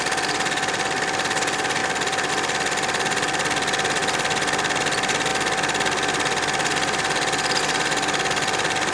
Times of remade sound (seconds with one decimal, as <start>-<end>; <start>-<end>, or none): none